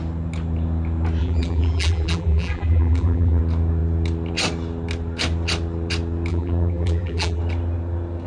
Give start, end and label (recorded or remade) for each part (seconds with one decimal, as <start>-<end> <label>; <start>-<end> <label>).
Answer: 0.0-1.2 recorded; 1.2-3.4 remade; 3.4-6.3 recorded; 6.3-7.4 remade; 7.4-8.3 recorded